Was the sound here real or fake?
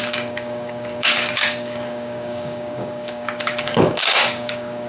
fake